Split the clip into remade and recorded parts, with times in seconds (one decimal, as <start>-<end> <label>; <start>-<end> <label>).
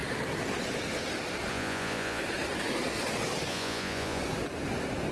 0.0-1.5 recorded; 1.5-2.2 remade; 2.2-3.5 recorded; 3.5-4.2 remade; 4.2-5.1 recorded